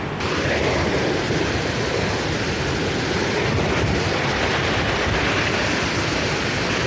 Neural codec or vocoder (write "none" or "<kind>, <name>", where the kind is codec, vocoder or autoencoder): none